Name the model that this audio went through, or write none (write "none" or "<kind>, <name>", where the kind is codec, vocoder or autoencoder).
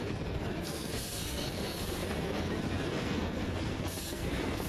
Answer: codec, SNAC